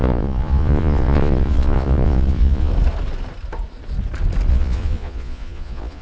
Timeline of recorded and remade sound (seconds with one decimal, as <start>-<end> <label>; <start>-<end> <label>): 0.0-2.7 remade; 2.7-4.5 recorded; 4.5-6.0 remade